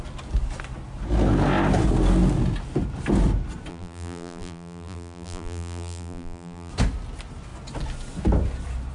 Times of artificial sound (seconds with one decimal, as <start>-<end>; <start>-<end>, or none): 3.7-6.7